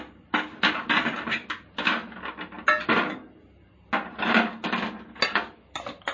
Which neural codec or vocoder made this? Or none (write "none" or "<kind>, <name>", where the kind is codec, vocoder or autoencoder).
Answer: none